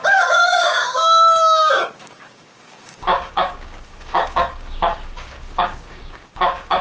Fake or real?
fake